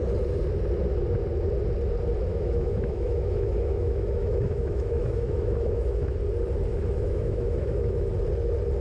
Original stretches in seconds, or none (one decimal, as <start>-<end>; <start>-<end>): 0.0-2.3; 6.2-6.7; 8.1-8.8